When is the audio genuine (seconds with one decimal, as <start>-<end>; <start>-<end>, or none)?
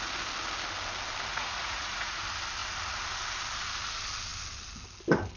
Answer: 0.0-1.3; 2.2-5.4